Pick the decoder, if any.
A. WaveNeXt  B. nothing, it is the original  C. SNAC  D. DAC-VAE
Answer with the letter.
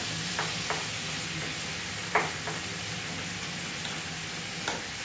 B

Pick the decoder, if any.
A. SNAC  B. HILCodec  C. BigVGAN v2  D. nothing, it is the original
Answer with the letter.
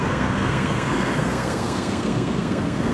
A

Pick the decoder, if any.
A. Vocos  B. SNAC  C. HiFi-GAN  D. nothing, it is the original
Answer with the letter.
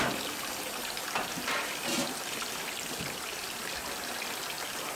D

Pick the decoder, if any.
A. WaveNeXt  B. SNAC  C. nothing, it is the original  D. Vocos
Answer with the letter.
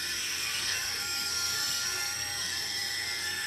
B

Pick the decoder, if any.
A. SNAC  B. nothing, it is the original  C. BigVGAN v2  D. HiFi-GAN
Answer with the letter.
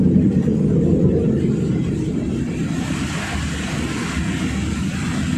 B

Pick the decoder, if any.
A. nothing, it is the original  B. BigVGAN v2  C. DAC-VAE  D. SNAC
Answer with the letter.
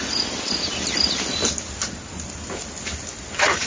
A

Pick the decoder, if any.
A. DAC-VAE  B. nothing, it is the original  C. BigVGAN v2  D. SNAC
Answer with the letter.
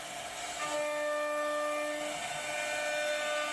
B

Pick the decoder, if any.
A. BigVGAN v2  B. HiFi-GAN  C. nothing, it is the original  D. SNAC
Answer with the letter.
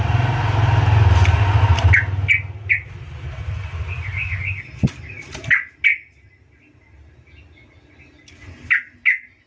C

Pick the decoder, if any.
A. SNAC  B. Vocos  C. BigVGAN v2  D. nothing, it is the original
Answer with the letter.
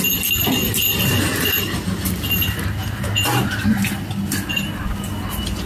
D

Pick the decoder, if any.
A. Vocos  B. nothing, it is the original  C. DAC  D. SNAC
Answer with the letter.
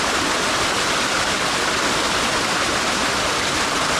B